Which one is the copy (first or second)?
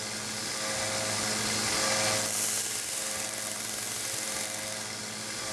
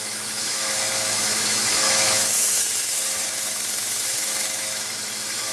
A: second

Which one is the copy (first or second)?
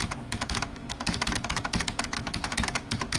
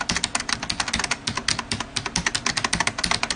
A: first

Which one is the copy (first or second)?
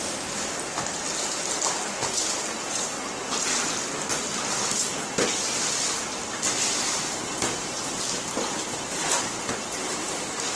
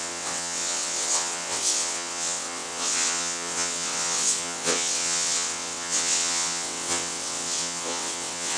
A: second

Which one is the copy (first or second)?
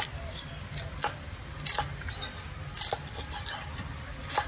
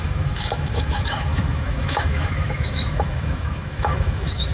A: second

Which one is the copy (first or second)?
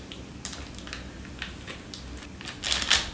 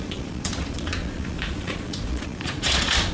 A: second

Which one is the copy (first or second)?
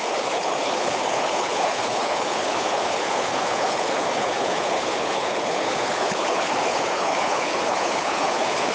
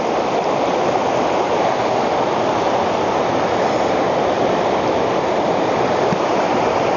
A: first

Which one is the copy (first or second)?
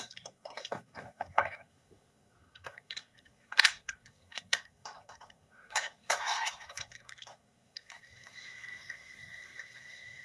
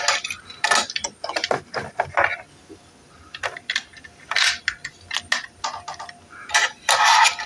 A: first